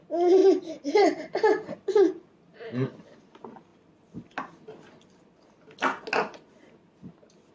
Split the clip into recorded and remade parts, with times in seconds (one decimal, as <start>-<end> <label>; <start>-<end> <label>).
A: 0.0-0.4 recorded; 0.4-1.2 remade; 1.2-2.5 recorded; 2.5-3.0 remade; 3.0-7.5 recorded